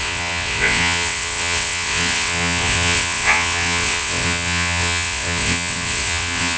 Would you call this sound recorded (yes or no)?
no